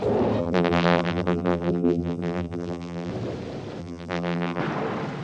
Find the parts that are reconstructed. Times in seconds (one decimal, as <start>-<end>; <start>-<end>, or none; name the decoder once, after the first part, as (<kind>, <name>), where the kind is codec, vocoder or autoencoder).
0.4-3.1 (vocoder, BigVGAN v2); 3.8-4.6